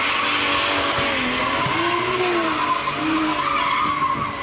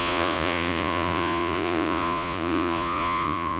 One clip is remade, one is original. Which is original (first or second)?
first